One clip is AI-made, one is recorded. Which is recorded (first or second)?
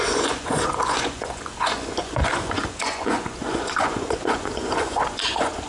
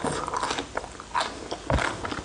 second